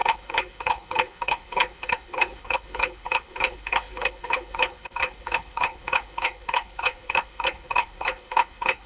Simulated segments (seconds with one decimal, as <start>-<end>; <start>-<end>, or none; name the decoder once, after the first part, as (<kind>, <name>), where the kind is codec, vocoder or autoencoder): 0.0-8.9 (codec, HILCodec)